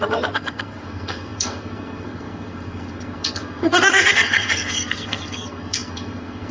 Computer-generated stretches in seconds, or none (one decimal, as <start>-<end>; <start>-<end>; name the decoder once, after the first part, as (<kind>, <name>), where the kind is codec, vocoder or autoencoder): 0.0-6.5 (codec, SNAC)